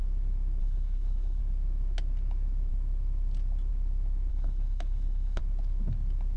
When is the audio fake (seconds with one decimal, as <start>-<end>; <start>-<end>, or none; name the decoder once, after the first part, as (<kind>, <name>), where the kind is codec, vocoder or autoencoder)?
0.6-1.4 (codec, HILCodec); 4.3-5.4